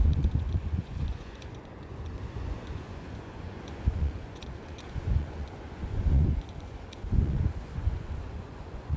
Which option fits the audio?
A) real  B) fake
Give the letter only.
B